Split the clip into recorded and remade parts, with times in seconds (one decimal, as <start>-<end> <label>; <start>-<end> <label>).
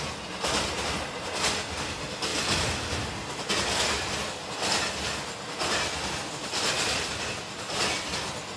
0.0-8.6 recorded